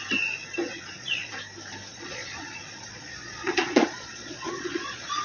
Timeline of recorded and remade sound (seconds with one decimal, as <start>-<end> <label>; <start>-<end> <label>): 0.0-0.7 recorded; 0.7-1.3 remade; 1.3-1.9 recorded; 1.9-5.2 remade